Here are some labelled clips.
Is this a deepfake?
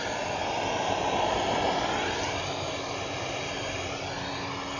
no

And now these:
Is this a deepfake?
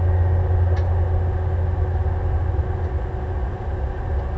no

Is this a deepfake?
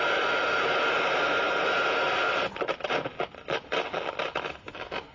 no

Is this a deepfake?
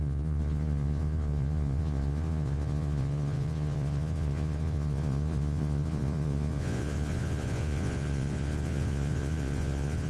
yes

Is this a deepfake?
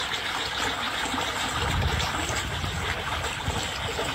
no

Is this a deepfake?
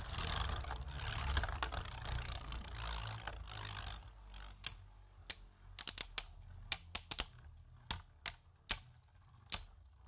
no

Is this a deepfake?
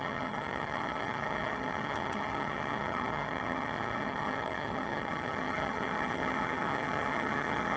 yes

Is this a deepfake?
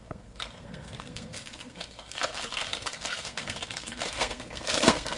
yes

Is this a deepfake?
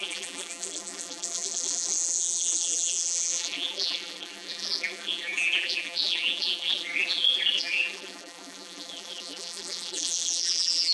yes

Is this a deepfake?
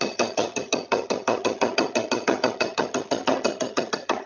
yes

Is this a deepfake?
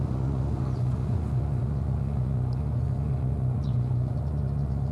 yes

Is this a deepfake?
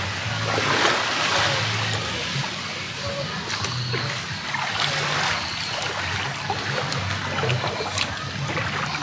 no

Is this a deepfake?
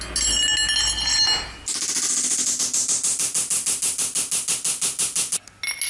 no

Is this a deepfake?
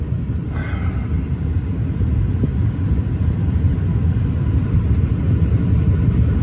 no